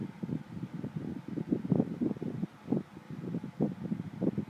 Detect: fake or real real